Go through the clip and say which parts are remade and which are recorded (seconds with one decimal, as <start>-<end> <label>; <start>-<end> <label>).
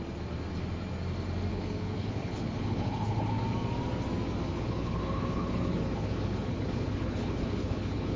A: 0.0-1.5 recorded; 1.5-3.4 remade; 3.4-4.5 recorded; 4.5-8.2 remade